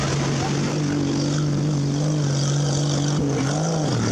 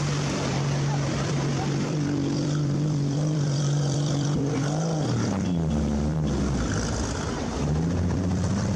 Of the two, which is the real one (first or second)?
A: first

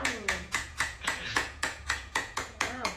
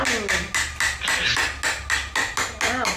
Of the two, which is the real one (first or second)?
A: second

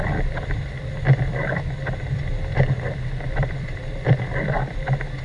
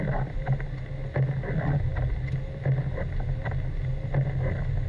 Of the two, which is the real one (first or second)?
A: second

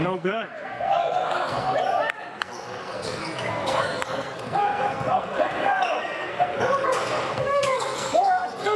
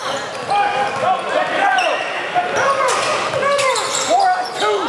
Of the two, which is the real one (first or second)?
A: second